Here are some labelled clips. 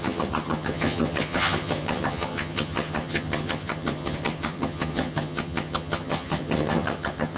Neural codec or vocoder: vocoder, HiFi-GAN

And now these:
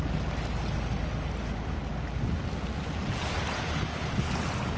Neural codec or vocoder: none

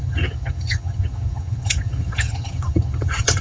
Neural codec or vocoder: vocoder, HiFi-GAN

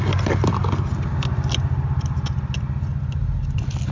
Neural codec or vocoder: none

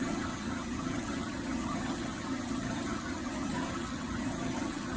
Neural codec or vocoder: vocoder, HiFi-GAN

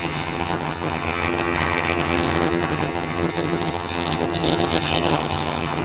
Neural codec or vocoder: vocoder, HiFi-GAN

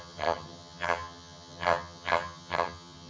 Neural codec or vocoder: vocoder, HiFi-GAN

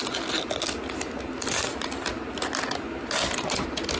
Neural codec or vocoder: none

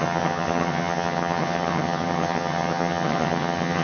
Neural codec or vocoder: vocoder, HiFi-GAN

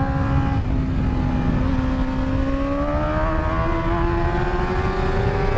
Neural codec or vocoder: none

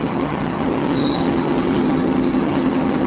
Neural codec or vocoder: vocoder, HiFi-GAN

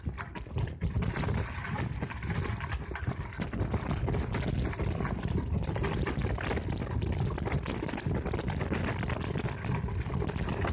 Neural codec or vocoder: none